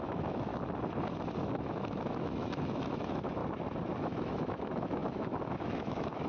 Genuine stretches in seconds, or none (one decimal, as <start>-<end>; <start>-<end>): 0.5-1.6; 3.4-4.0